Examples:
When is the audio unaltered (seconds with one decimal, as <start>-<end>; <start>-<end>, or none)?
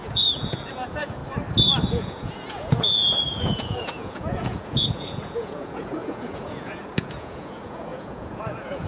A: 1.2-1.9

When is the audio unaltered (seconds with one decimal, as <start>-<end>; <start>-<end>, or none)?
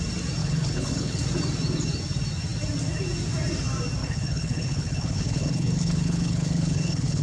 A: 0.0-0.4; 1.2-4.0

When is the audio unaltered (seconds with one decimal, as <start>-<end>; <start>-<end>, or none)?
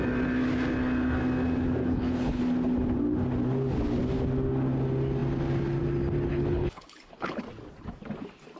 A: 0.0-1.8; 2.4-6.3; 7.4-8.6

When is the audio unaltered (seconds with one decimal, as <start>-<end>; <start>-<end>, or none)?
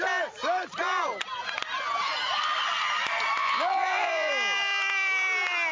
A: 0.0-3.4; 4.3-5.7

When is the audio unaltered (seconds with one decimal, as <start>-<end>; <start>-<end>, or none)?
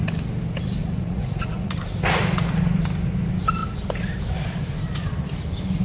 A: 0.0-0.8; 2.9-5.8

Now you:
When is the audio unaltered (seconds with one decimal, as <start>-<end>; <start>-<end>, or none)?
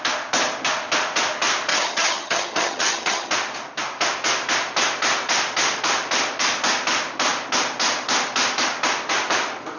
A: 0.0-1.7; 3.3-9.8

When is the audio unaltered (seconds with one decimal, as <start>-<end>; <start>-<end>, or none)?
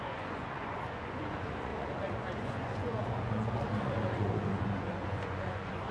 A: none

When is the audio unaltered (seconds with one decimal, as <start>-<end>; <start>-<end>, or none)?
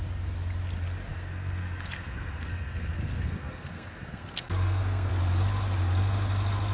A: 0.0-1.1; 5.1-6.7